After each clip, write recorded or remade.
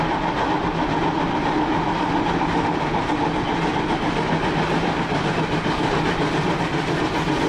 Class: recorded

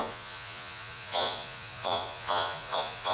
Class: remade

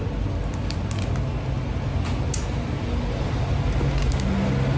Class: recorded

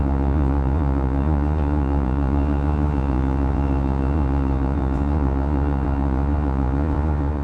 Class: remade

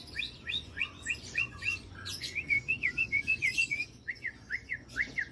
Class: remade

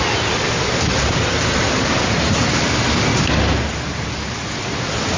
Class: recorded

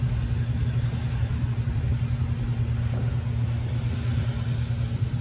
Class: recorded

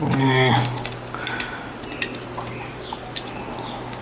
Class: recorded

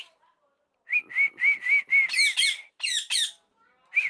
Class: recorded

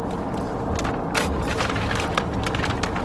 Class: recorded